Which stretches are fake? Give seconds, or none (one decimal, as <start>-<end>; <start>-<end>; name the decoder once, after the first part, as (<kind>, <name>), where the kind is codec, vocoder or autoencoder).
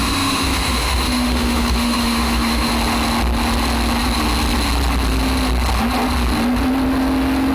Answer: 0.0-2.7 (autoencoder, DAC-VAE)